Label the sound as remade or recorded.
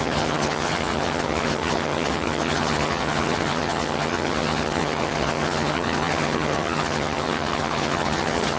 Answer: remade